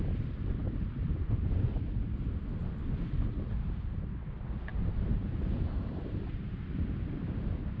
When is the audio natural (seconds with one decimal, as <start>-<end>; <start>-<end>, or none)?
0.0-0.6; 1.6-4.7; 6.5-7.8

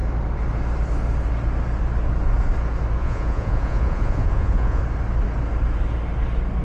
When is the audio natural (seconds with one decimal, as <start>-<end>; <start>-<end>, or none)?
0.0-3.0; 4.8-6.6

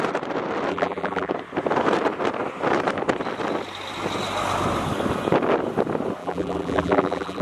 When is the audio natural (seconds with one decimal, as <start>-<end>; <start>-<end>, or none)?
0.0-0.7; 1.3-6.2

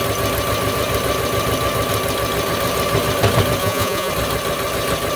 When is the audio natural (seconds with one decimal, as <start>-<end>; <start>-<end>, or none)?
0.0-3.6; 4.1-5.2